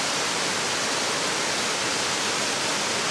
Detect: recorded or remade recorded